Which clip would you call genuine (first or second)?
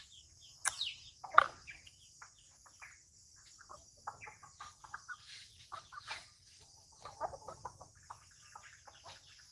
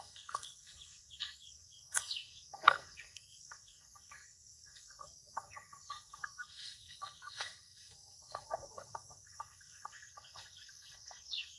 first